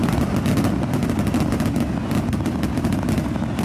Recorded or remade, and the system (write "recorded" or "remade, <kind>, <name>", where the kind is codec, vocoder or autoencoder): recorded